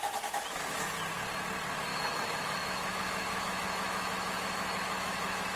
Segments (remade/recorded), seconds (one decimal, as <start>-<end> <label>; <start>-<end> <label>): 0.0-1.9 recorded; 1.9-5.6 remade